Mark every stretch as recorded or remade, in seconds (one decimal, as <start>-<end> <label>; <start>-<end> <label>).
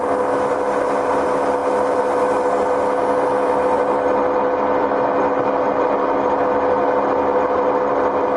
0.0-8.4 recorded